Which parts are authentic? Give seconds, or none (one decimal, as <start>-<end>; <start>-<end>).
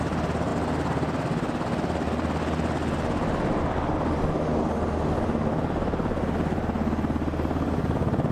0.0-8.3